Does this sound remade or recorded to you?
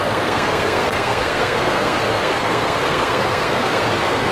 remade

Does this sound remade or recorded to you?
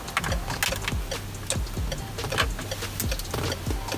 recorded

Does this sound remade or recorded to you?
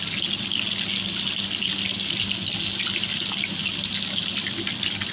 recorded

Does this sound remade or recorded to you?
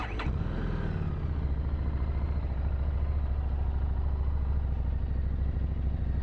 remade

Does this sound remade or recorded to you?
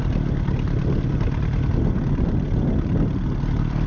recorded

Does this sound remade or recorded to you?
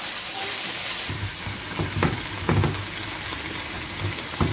recorded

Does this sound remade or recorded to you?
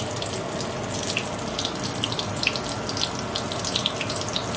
recorded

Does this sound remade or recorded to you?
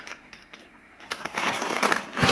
remade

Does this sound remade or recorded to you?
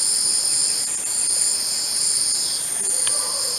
recorded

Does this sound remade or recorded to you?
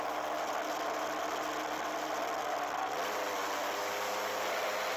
recorded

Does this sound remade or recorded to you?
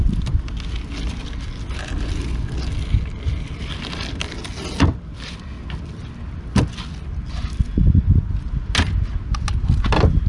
recorded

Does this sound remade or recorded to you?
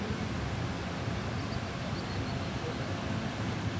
remade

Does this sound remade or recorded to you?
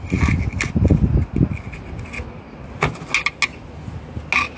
recorded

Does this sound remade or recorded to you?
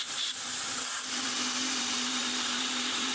remade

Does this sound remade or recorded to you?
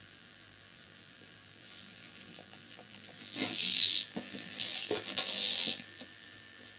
remade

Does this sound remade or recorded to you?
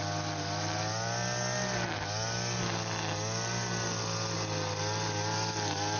recorded